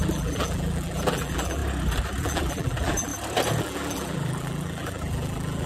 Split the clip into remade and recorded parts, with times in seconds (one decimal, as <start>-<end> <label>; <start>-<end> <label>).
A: 0.0-1.6 remade; 1.6-2.2 recorded; 2.2-3.1 remade; 3.1-3.6 recorded; 3.6-5.7 remade